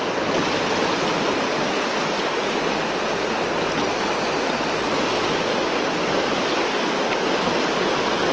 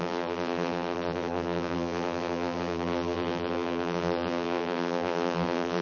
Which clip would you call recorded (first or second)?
first